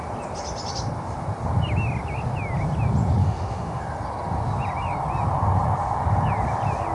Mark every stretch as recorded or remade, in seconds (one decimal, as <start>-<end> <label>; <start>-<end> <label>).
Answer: 0.0-3.2 recorded; 3.2-3.8 remade; 3.8-6.9 recorded